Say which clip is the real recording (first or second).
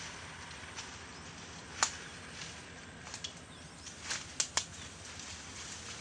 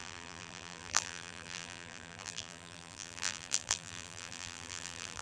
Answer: first